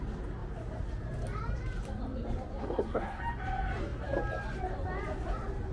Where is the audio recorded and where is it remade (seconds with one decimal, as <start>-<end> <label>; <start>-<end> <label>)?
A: 0.0-2.6 recorded; 2.6-3.2 remade; 3.2-5.7 recorded